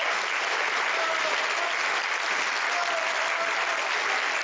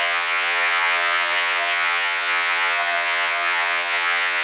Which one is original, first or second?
first